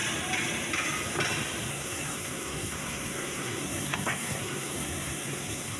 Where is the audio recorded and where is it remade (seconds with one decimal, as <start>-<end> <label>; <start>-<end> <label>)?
0.0-1.7 recorded; 1.7-5.8 remade